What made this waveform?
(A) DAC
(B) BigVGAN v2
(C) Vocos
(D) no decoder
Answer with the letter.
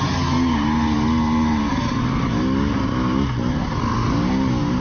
D